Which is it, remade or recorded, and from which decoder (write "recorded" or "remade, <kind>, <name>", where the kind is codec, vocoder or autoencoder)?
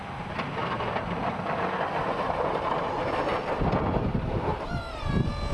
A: recorded